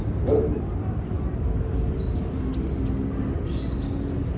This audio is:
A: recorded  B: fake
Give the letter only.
A